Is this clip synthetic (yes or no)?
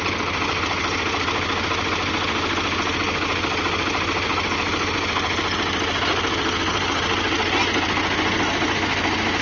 no